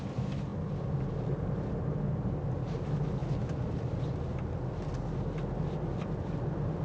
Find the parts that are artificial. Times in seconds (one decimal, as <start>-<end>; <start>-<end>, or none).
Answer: 0.0-4.9; 5.6-6.8